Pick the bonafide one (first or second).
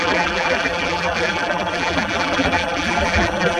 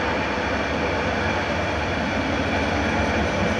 second